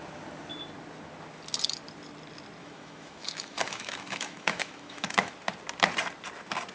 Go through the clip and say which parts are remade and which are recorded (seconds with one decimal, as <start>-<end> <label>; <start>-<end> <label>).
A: 0.0-2.6 recorded; 2.6-5.3 remade; 5.3-6.7 recorded

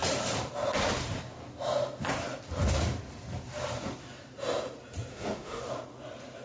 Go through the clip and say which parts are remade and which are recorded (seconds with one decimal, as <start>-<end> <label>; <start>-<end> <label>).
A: 0.0-5.1 recorded; 5.1-5.6 remade; 5.6-6.4 recorded

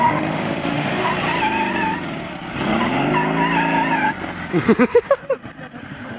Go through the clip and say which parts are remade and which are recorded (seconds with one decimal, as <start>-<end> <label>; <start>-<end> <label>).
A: 0.0-1.1 remade; 1.1-4.5 recorded; 4.5-5.2 remade; 5.2-5.8 recorded; 5.8-6.2 remade

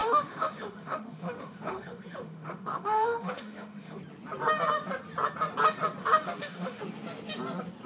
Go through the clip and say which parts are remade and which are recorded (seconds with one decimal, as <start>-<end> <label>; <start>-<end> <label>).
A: 0.0-4.0 remade; 4.0-6.0 recorded; 6.0-6.8 remade; 6.8-7.9 recorded

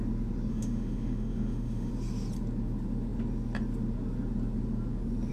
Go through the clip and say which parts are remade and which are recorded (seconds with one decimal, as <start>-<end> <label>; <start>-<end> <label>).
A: 0.0-0.5 recorded; 0.5-1.9 remade; 1.9-5.3 recorded